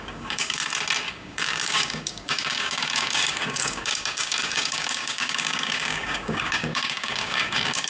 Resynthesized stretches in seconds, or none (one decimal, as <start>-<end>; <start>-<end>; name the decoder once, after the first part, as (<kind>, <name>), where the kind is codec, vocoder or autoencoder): 0.0-0.6 (codec, DAC); 1.1-7.9

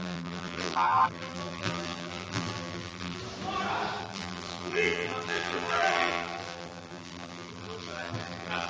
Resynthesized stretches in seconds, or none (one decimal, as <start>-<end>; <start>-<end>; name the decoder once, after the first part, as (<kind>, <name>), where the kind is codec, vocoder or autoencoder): 0.0-3.2 (vocoder, BigVGAN v2); 4.0-8.7

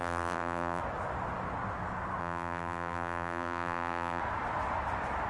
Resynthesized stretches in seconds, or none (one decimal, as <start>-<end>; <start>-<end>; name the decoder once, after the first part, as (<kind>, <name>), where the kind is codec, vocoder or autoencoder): 0.0-0.8 (vocoder, BigVGAN v2); 2.2-4.2

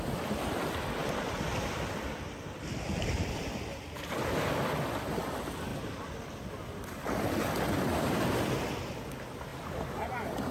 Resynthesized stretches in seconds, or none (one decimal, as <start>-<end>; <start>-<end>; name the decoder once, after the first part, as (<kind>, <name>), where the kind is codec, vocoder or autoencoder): 1.0-3.8 (vocoder, BigVGAN v2)

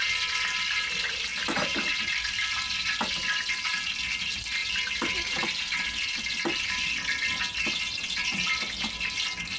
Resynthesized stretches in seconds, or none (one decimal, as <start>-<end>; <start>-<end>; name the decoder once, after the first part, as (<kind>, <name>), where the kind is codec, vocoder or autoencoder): 1.3-3.8 (vocoder, BigVGAN v2); 4.6-7.4

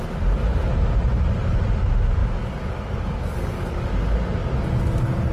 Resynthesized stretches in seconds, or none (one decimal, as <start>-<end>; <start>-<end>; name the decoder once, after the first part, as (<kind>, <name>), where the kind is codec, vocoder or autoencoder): 2.2-3.9 (codec, DAC)